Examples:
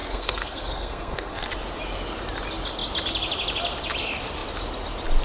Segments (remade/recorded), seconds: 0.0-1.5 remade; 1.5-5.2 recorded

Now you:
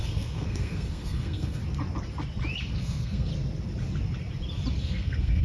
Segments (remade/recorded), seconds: 0.0-1.6 remade; 1.6-2.7 recorded; 2.7-3.3 remade; 3.3-4.8 recorded; 4.8-5.4 remade